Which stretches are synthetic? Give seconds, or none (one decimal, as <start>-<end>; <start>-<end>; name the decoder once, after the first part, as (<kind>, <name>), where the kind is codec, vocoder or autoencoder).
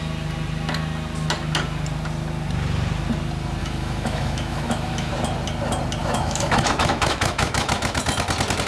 3.6-5.1 (autoencoder, DAC-VAE); 6.0-8.0